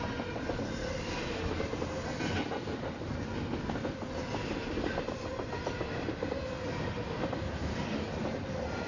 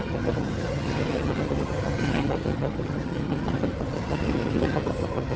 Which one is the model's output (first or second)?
second